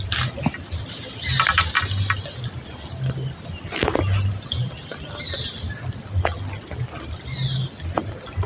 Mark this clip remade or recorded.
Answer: recorded